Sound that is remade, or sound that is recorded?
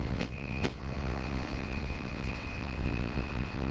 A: remade